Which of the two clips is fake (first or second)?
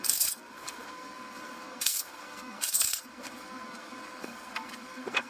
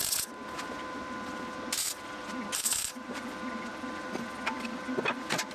first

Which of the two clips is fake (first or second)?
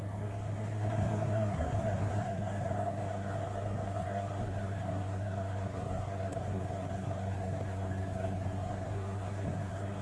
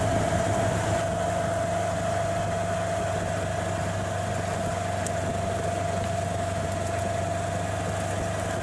first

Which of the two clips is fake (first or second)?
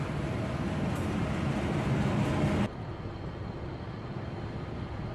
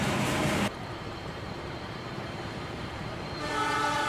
second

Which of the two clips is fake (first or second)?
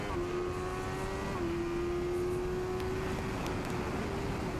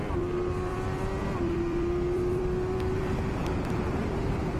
second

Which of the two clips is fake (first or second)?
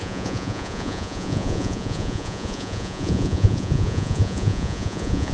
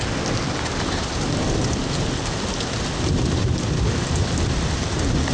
first